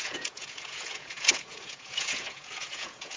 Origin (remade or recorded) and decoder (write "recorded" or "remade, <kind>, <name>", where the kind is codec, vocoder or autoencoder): remade, vocoder, Vocos